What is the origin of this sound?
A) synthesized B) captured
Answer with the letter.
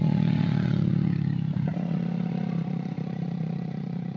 A